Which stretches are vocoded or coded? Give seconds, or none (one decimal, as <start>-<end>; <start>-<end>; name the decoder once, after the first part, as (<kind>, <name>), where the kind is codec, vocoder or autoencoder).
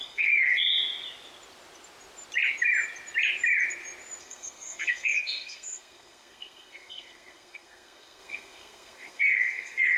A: 0.0-0.6 (codec, SNAC); 4.2-10.0